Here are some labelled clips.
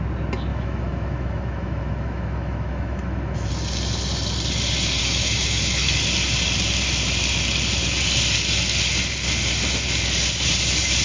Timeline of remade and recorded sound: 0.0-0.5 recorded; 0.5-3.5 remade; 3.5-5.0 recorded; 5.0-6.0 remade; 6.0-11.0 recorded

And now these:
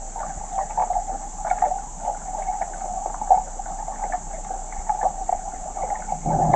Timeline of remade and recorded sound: 0.0-5.3 recorded; 5.3-6.0 remade; 6.0-6.6 recorded

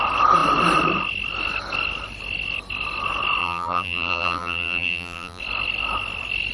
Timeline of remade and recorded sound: 0.0-3.4 recorded; 3.4-5.4 remade; 5.4-6.5 recorded